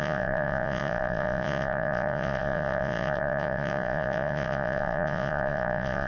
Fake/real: fake